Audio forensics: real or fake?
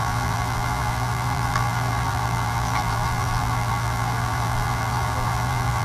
fake